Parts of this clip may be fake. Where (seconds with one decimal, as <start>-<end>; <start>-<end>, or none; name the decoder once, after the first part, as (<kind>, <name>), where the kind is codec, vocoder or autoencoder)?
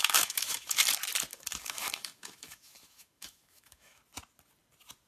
0.0-0.8 (autoencoder, DAC-VAE); 1.3-4.0